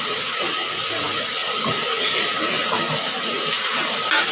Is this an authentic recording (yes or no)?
yes